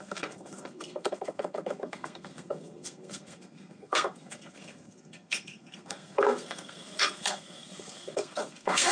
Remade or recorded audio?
remade